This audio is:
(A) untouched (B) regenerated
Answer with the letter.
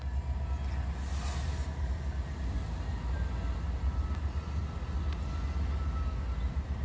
A